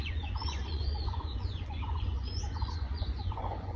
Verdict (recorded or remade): remade